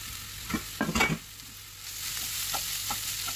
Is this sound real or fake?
real